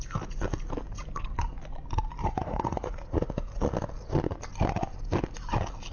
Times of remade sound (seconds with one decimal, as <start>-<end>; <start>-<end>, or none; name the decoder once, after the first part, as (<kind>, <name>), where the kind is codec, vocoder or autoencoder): 2.2-3.3 (vocoder, Vocos)